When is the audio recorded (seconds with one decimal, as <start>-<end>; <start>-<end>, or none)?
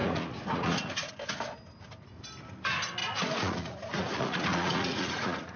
1.1-3.0